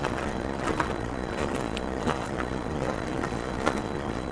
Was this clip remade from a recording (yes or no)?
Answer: yes